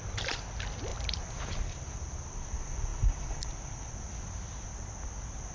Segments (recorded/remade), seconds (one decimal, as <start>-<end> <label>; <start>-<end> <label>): 0.0-5.5 recorded